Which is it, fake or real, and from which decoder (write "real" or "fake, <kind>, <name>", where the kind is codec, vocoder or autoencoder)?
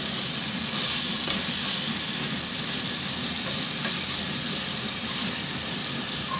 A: real